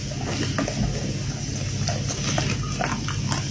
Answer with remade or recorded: recorded